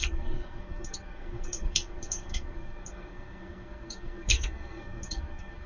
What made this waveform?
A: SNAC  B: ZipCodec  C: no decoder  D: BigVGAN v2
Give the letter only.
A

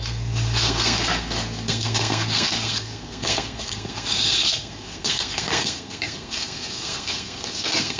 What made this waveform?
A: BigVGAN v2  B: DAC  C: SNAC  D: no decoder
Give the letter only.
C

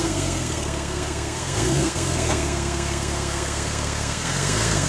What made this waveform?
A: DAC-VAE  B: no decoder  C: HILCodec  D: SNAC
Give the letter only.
D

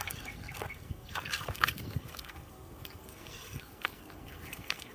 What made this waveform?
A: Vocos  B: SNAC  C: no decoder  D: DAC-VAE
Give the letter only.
B